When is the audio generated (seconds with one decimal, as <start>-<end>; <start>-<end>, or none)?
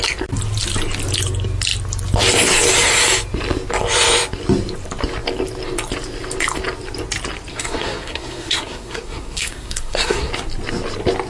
7.5-10.3